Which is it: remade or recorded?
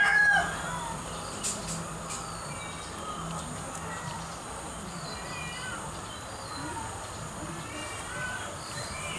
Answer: recorded